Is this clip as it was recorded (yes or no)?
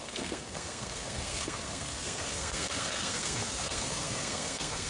no